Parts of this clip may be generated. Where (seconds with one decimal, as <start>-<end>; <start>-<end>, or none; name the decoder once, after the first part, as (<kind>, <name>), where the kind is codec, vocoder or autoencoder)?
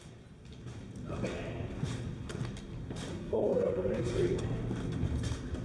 3.1-4.2 (codec, SNAC)